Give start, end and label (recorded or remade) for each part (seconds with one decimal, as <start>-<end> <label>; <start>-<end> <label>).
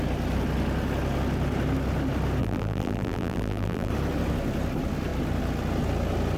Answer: 0.0-2.4 recorded; 2.4-3.9 remade; 3.9-6.4 recorded